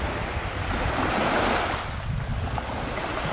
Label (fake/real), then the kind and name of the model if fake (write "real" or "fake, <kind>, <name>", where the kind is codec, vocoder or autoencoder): real